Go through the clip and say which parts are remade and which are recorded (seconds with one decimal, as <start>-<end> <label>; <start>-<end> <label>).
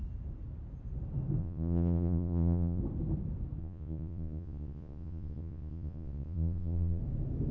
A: 0.0-1.4 recorded; 1.4-2.8 remade; 2.8-3.6 recorded; 3.6-7.0 remade; 7.0-7.5 recorded